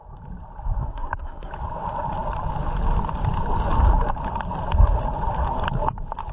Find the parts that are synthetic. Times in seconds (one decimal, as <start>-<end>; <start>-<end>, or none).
0.8-1.5